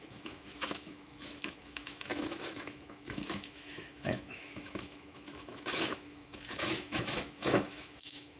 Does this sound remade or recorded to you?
remade